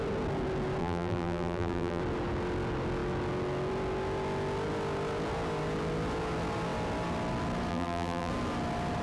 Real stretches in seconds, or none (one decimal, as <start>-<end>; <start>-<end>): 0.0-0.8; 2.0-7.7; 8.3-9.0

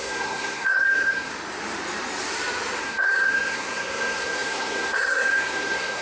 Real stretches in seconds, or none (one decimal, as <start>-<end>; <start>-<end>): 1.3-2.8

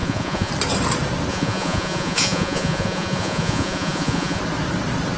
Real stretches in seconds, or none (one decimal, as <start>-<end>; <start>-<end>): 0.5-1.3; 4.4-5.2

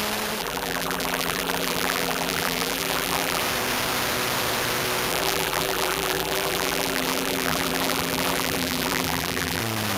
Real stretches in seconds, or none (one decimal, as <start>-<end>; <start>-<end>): 0.0-0.4; 3.4-5.1; 9.6-10.0

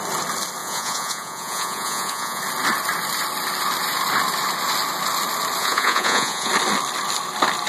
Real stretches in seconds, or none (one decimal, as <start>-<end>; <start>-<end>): 0.0-0.6; 2.4-5.6; 6.5-7.7